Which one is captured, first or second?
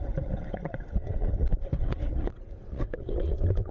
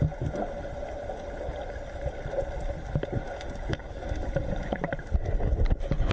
second